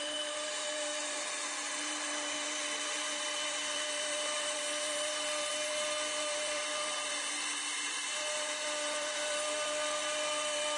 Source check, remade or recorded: remade